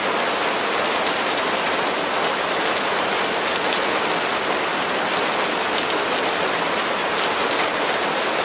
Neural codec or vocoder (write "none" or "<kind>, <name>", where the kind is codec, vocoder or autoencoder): none